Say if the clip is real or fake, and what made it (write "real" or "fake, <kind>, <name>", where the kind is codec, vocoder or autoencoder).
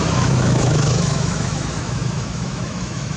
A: fake, autoencoder, DAC-VAE